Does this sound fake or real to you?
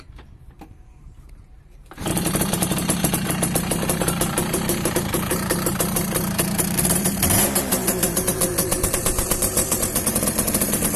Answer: fake